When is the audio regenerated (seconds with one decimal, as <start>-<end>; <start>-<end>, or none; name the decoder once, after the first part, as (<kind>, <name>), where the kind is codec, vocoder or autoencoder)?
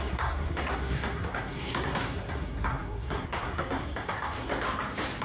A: 0.0-4.5 (codec, SNAC)